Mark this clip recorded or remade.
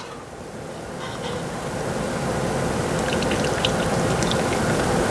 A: recorded